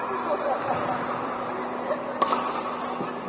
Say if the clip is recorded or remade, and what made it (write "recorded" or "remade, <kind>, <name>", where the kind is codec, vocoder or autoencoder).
recorded